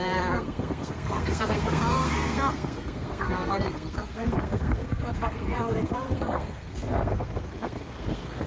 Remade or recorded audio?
remade